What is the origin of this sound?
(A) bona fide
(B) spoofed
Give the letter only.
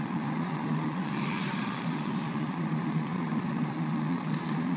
B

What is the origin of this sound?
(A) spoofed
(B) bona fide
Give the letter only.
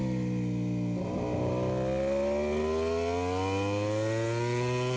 B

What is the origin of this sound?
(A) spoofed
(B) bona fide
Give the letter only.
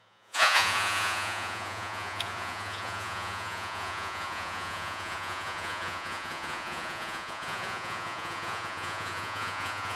A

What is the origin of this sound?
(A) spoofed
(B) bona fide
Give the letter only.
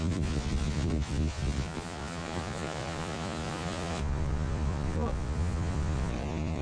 A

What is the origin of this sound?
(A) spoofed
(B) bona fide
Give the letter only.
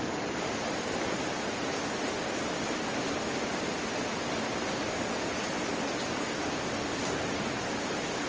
B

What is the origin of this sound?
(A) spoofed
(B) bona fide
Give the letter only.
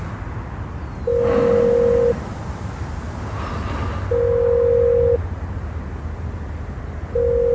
B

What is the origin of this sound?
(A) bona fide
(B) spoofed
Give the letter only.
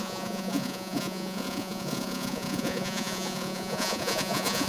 B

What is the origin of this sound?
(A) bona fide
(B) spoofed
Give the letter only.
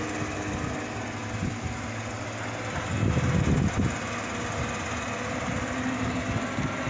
A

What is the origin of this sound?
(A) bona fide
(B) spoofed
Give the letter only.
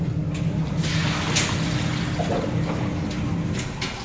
A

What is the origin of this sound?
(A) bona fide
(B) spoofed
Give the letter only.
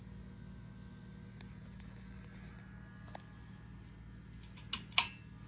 A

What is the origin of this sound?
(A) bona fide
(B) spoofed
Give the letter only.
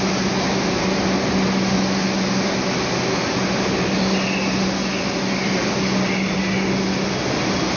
A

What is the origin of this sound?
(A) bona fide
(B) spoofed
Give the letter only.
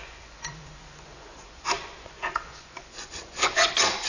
B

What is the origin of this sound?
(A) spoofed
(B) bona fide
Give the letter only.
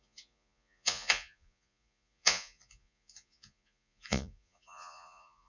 A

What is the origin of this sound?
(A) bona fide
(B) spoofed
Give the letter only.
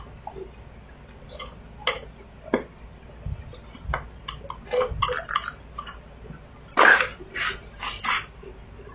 A